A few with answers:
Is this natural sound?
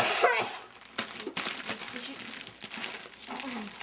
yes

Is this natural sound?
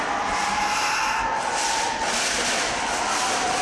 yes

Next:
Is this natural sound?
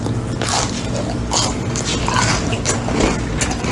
yes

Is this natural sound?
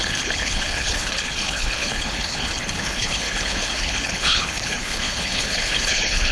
no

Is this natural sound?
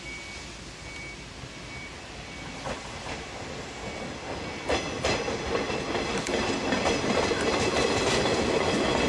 yes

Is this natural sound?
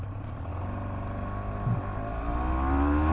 yes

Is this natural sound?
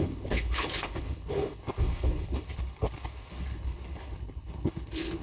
no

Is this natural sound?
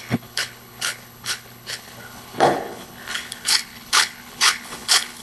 no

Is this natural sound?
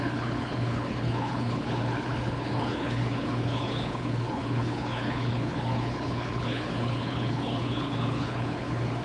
no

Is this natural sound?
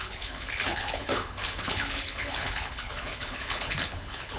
no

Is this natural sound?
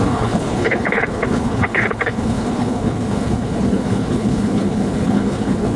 no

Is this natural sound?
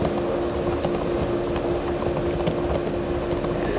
yes